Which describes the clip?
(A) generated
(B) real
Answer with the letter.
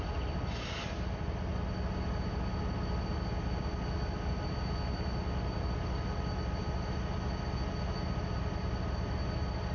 B